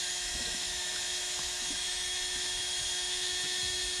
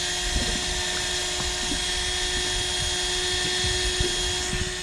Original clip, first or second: second